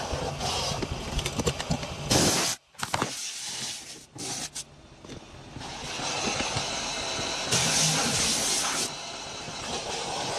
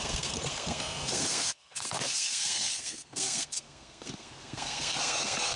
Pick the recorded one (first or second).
first